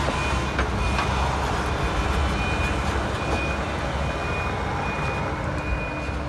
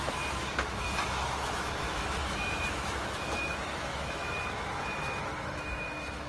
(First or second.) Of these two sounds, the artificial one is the second